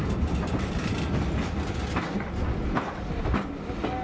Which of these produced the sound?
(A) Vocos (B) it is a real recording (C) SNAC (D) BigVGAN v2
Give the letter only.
B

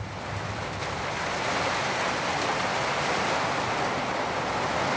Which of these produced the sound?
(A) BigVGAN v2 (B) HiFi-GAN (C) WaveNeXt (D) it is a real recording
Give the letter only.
D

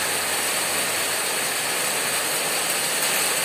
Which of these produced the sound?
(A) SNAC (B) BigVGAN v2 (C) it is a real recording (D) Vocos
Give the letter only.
C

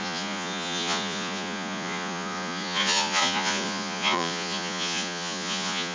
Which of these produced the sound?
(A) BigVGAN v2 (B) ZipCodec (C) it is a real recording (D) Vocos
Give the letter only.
D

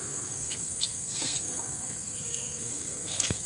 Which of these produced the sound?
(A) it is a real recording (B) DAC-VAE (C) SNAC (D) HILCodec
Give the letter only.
C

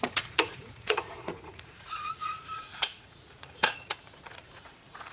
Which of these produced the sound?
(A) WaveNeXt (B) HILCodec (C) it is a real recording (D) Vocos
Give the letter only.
D